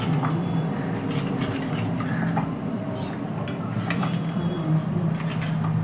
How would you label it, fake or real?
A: real